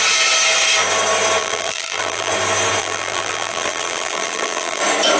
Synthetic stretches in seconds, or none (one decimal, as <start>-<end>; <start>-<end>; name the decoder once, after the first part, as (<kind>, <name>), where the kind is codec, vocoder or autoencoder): 1.4-2.3 (vocoder, BigVGAN v2); 2.8-4.8